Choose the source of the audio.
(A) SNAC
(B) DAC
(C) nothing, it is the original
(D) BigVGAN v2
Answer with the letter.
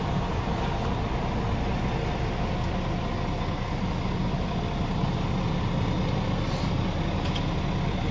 C